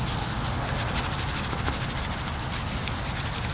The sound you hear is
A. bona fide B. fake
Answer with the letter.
A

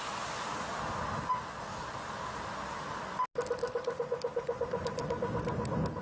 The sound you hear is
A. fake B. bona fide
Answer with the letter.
B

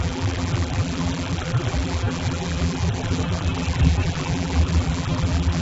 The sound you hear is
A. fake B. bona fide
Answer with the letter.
A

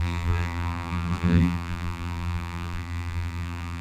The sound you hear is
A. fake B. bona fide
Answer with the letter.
A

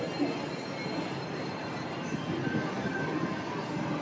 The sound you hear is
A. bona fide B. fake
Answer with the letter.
A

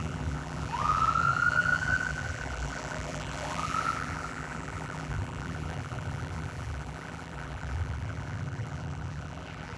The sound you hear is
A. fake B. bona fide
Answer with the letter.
A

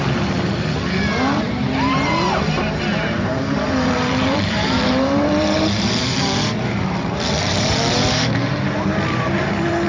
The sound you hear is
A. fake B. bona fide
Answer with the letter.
A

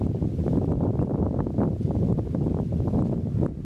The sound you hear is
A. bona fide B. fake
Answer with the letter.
A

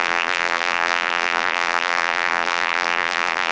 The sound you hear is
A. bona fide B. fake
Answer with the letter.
B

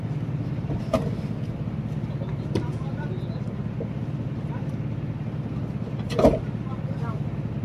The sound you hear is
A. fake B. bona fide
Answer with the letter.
B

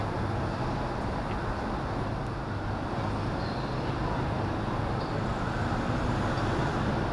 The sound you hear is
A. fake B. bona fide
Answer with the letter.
B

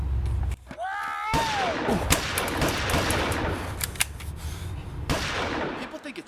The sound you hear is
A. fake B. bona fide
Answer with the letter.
B